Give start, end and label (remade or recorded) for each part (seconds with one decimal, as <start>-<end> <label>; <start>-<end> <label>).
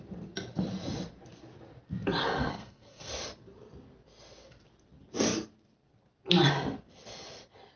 0.0-2.2 recorded; 2.2-3.1 remade; 3.1-7.8 recorded